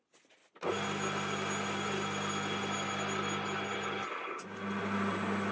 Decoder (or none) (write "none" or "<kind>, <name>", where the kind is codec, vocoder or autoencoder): none